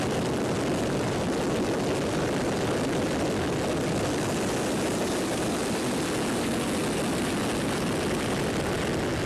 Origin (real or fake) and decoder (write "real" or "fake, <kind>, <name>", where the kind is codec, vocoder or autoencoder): real